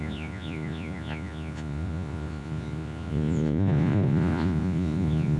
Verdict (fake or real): fake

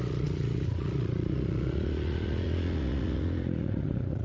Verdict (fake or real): fake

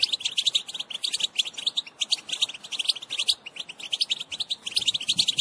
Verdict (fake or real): real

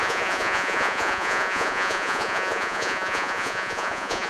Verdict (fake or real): fake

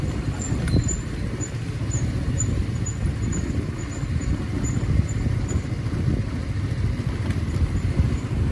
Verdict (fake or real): real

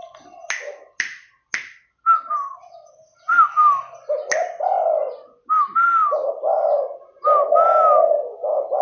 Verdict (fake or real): real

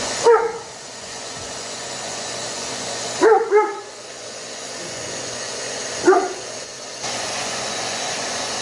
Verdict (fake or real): fake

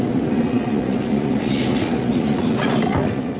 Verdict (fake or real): fake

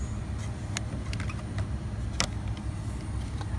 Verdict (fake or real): real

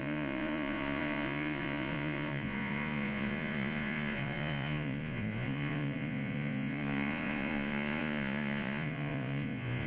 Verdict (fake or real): fake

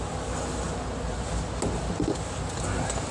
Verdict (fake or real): real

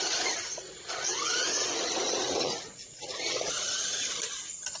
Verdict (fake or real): fake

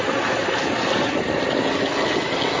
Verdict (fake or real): real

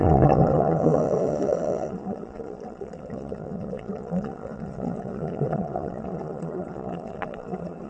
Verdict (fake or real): fake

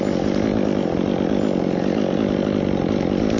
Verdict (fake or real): real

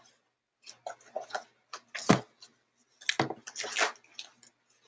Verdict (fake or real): real